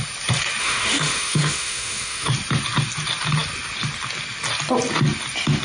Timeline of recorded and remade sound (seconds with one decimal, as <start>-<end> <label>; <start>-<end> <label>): 0.0-0.6 recorded; 0.6-2.3 remade; 2.3-5.6 recorded